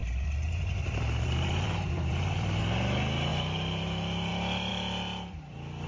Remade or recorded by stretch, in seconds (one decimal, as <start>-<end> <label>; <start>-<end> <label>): 0.0-2.6 remade; 2.6-3.3 recorded; 3.3-4.3 remade; 4.3-4.7 recorded; 4.7-5.9 remade

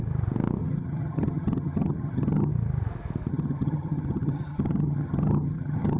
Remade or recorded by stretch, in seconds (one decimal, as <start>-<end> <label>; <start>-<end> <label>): 0.0-0.6 recorded; 0.6-2.5 remade; 2.5-3.3 recorded; 3.3-6.0 remade

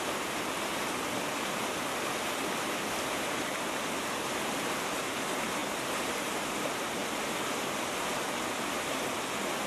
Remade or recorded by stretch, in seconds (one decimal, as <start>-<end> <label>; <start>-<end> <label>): 0.0-5.6 remade; 5.6-6.2 recorded; 6.2-7.0 remade; 7.0-9.7 recorded

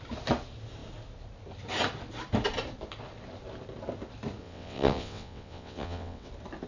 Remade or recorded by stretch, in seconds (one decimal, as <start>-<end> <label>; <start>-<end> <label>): 0.0-4.4 recorded; 4.4-6.3 remade; 6.3-6.7 recorded

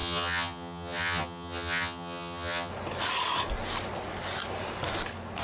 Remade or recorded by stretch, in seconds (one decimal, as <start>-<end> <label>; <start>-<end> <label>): 0.0-2.7 remade; 2.7-5.4 recorded

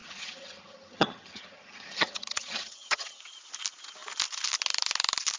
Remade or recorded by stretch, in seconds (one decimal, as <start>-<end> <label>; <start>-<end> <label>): 0.0-3.2 remade; 3.2-5.4 recorded

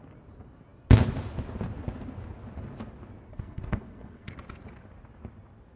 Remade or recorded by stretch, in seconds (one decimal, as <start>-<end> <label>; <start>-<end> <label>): 0.0-3.3 recorded; 3.3-4.3 remade; 4.3-5.8 recorded

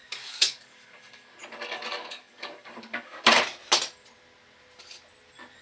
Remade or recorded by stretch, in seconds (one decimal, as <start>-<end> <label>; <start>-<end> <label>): 0.0-3.4 remade; 3.4-5.6 recorded